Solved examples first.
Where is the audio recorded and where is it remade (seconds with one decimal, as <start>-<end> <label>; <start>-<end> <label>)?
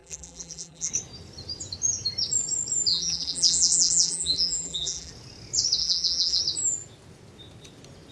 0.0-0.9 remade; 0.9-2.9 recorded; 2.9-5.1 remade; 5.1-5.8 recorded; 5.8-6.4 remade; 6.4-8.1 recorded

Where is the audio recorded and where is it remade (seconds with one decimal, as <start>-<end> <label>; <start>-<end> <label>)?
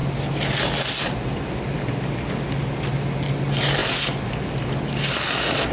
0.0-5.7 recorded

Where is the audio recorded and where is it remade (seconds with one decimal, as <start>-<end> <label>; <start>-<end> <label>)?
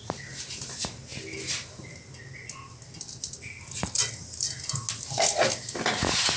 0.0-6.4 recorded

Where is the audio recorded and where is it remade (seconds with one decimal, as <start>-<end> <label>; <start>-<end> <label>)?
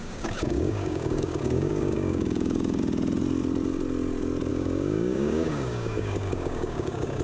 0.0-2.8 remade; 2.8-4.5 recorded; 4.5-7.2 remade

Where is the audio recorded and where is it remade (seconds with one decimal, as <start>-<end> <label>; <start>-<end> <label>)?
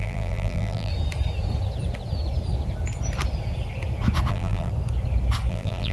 0.0-0.9 remade; 0.9-4.3 recorded; 4.3-4.7 remade; 4.7-5.5 recorded; 5.5-5.9 remade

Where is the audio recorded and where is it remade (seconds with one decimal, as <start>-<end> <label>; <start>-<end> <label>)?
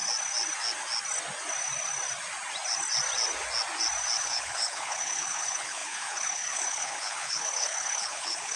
0.0-4.2 recorded; 4.2-8.6 remade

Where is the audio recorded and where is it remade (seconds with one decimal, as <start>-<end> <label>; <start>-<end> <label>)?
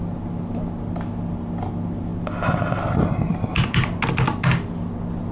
0.0-5.3 recorded